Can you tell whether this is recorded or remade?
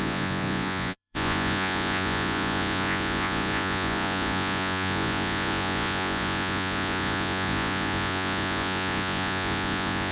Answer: remade